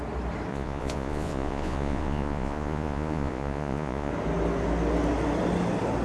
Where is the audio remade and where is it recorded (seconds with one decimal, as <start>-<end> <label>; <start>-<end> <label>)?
0.0-0.5 recorded; 0.5-4.1 remade; 4.1-6.0 recorded